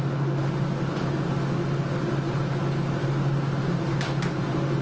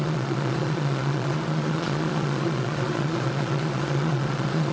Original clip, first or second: first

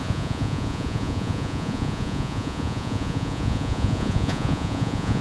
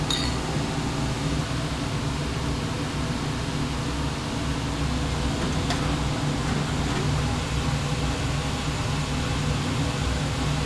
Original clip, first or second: second